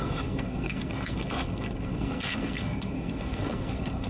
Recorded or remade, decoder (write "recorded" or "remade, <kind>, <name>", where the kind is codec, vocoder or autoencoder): remade, codec, SNAC